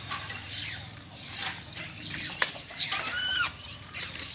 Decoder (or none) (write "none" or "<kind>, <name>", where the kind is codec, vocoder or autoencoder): vocoder, BigVGAN v2